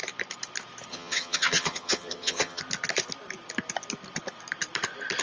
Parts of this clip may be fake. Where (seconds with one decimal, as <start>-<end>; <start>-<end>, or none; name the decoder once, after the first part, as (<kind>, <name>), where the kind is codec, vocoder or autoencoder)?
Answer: 0.9-2.6 (vocoder, HiFi-GAN)